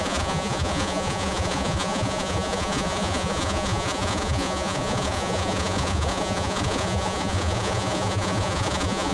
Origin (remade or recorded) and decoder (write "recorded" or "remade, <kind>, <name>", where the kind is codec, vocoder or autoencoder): remade, vocoder, Vocos